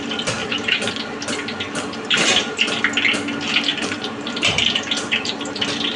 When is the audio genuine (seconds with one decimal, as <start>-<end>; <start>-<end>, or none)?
0.0-0.4; 0.9-3.7; 5.6-6.0